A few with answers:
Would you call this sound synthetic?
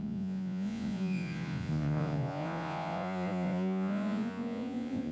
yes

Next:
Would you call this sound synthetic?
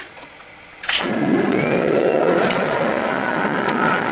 yes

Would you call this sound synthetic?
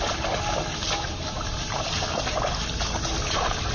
no